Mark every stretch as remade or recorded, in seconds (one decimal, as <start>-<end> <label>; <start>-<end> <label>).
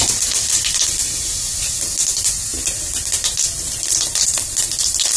0.0-5.2 recorded